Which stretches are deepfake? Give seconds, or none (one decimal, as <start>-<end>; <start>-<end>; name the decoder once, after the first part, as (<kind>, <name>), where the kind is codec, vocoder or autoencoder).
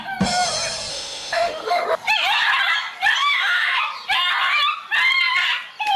0.9-1.8 (autoencoder, DAC-VAE); 3.2-3.8